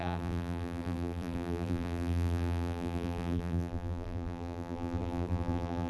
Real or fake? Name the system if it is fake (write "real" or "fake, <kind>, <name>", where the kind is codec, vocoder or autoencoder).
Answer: fake, vocoder, BigVGAN v2